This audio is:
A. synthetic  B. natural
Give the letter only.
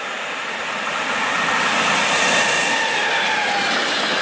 B